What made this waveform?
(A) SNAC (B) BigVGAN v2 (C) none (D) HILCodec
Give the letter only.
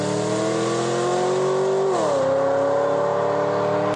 C